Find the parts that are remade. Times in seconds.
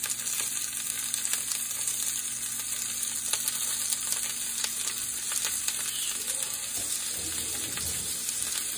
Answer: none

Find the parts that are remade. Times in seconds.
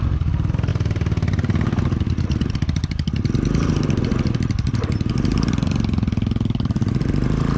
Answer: 0.0-7.6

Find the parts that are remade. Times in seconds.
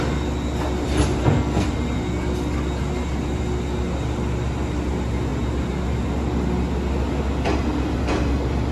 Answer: 1.2-1.7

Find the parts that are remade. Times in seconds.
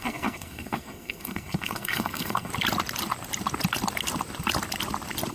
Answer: 0.0-2.5